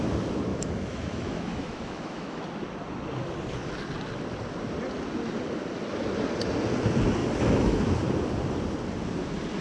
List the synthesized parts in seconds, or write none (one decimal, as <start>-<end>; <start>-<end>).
0.5-2.4; 7.2-7.8